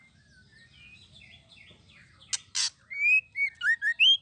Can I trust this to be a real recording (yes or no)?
yes